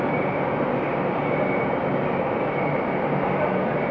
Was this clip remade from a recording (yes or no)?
no